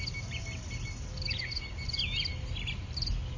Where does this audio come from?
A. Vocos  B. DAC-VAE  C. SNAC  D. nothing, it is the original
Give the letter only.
D